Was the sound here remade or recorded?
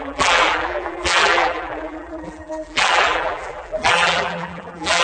remade